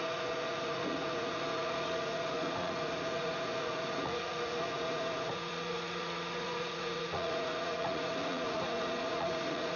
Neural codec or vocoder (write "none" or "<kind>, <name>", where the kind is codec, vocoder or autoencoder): vocoder, Vocos